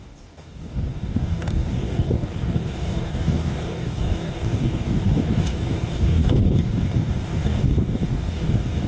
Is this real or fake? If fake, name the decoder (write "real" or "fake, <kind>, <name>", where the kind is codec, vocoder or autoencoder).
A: fake, codec, DAC